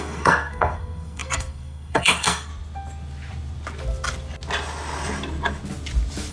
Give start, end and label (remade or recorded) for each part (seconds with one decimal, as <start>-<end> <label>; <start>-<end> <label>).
0.0-2.5 remade; 2.5-6.3 recorded